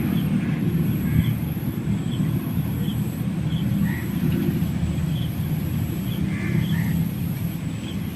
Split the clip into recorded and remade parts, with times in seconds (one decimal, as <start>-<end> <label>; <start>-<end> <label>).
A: 0.0-8.2 recorded